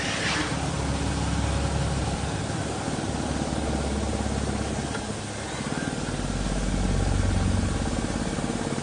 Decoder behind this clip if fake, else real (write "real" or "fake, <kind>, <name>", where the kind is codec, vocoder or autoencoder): real